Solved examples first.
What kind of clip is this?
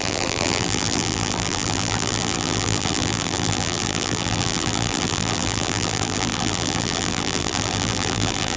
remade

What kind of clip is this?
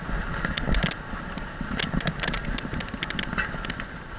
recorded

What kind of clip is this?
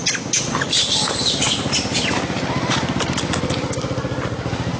recorded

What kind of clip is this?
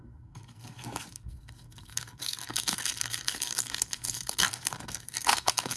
remade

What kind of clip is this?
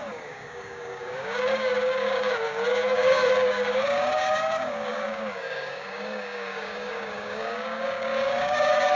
remade